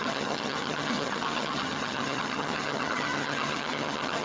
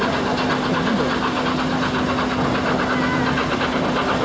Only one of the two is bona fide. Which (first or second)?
second